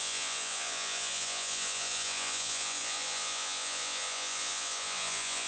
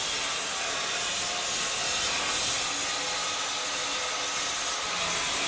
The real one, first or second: second